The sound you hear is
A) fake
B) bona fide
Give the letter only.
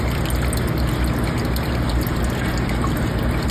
B